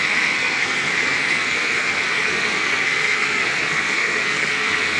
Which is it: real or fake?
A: fake